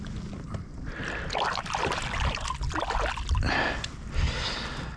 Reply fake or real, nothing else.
real